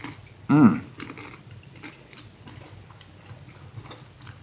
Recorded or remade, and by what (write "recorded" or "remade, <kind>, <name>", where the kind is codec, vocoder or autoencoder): recorded